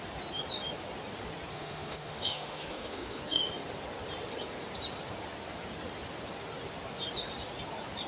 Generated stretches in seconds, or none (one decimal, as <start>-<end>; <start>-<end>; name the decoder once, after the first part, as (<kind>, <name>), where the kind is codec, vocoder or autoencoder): 1.5-3.4 (autoencoder, DAC-VAE)